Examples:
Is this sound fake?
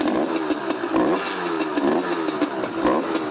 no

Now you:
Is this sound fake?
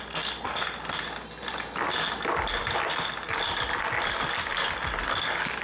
no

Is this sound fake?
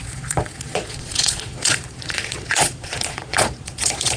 yes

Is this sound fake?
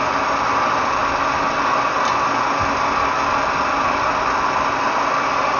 no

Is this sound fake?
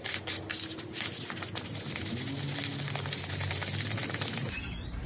no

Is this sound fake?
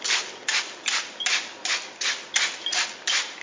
no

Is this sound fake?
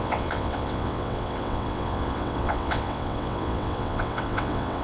yes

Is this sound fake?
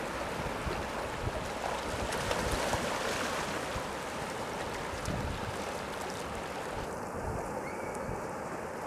no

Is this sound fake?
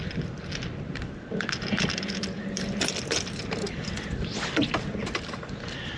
yes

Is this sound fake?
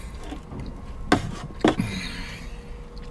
no